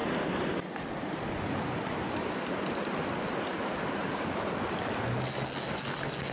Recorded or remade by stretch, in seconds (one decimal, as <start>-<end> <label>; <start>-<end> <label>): 0.0-6.3 recorded